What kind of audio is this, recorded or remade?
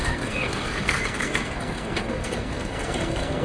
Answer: remade